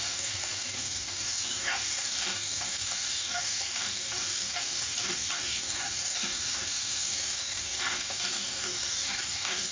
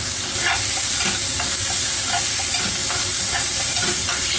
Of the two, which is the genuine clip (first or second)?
second